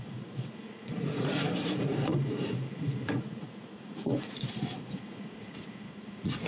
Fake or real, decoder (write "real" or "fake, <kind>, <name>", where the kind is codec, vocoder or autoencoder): fake, vocoder, Vocos